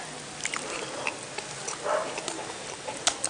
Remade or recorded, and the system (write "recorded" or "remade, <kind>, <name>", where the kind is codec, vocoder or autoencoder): recorded